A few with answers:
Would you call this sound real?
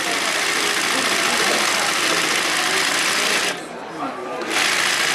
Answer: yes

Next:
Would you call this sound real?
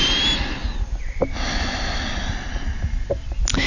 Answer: yes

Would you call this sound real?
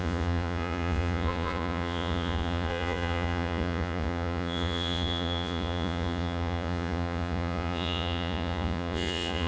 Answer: no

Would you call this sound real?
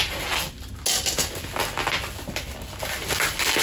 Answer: yes